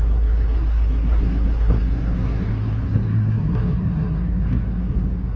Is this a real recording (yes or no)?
no